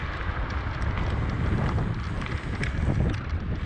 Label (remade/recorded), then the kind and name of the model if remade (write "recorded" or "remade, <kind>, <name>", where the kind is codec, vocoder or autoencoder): recorded